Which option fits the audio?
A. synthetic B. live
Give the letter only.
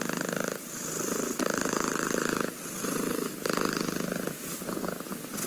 B